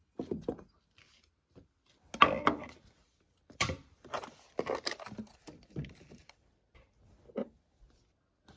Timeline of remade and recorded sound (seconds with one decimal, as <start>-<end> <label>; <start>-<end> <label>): 0.0-3.0 recorded; 3.0-6.2 remade; 6.2-8.6 recorded